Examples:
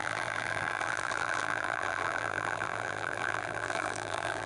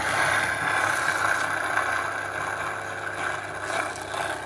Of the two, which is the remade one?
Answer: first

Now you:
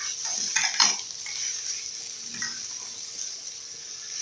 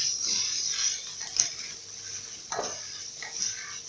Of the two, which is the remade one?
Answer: second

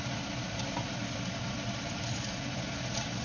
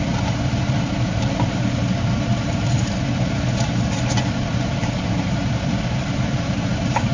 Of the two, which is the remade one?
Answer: second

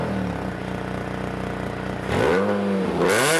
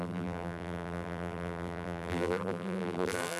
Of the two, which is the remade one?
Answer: second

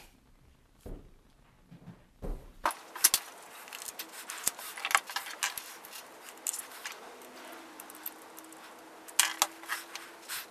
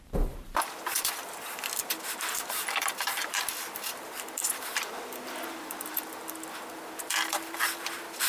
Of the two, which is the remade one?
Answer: second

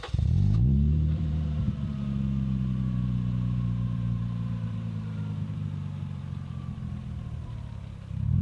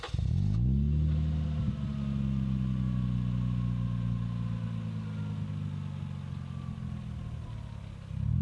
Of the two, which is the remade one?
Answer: first